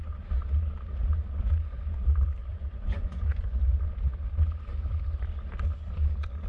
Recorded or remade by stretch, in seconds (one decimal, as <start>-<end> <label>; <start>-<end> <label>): 0.0-2.5 recorded; 2.5-3.6 remade; 3.6-6.5 recorded